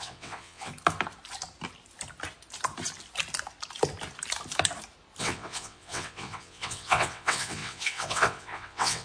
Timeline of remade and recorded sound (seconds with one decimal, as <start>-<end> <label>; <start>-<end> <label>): 0.0-0.7 remade; 0.7-5.2 recorded; 5.2-9.0 remade